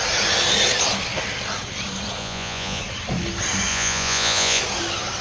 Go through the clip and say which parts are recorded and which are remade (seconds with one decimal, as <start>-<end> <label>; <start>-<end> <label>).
0.0-2.2 recorded; 2.2-2.8 remade; 2.8-3.7 recorded; 3.7-4.6 remade; 4.6-5.2 recorded